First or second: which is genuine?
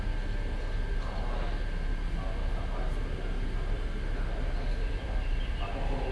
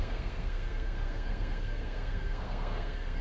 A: first